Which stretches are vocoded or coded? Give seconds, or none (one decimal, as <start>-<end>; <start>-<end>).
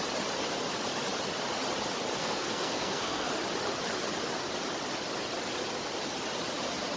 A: 2.2-3.3